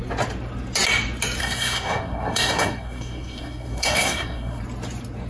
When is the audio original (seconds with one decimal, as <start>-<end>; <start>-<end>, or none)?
0.0-1.4; 4.6-5.3